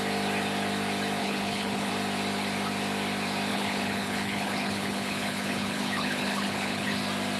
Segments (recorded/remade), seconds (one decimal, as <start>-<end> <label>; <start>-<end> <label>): 0.0-1.2 recorded; 1.2-1.9 remade; 1.9-3.5 recorded; 3.5-7.0 remade; 7.0-7.4 recorded